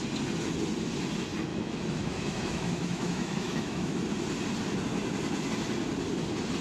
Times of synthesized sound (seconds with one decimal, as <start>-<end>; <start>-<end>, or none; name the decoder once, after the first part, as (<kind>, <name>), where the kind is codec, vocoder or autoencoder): 1.5-4.0 (autoencoder, DAC-VAE)